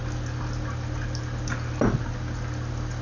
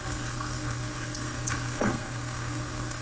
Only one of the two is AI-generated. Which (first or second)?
second